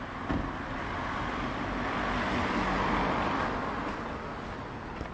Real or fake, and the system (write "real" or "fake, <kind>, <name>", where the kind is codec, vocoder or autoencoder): real